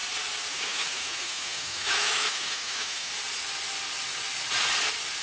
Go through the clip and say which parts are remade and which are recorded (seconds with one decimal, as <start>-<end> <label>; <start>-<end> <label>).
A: 0.0-0.5 recorded; 0.5-3.1 remade; 3.1-5.2 recorded